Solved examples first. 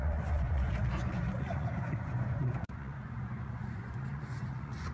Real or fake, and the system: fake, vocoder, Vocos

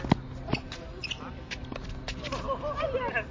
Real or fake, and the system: real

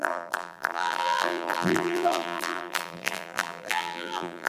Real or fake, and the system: fake, vocoder, BigVGAN v2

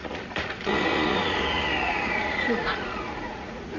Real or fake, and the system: fake, vocoder, Vocos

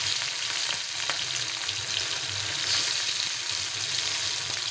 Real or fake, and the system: real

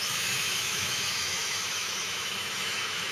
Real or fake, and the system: fake, autoencoder, DAC-VAE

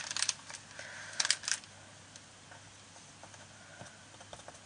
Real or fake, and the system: real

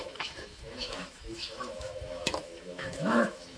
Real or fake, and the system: fake, autoencoder, DAC-VAE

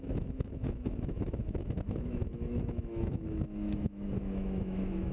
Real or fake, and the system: fake, autoencoder, DAC-VAE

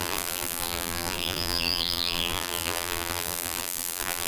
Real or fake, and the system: fake, vocoder, BigVGAN v2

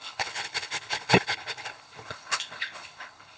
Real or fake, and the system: fake, codec, HILCodec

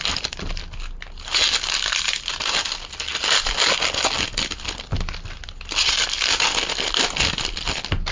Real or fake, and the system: real